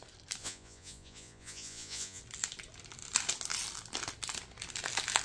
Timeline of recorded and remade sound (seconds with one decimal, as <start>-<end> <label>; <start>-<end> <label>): 0.0-0.4 recorded; 0.4-2.2 remade; 2.2-5.2 recorded